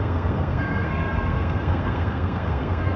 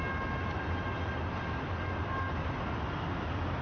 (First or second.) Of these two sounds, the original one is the second